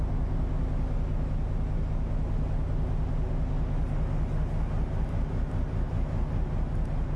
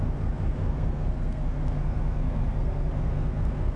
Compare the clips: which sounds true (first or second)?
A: first